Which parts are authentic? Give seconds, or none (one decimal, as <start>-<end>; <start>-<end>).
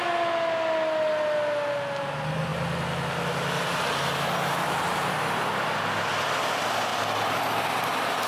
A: 0.0-8.3